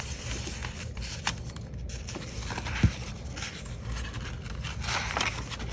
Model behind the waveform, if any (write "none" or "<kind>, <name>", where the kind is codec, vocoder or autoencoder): none